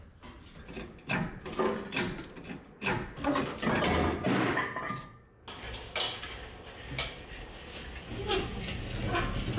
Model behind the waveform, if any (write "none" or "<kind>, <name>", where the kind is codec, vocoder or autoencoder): none